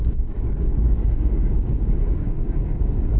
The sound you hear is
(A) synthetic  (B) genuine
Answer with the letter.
A